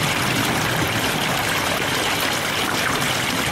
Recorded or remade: recorded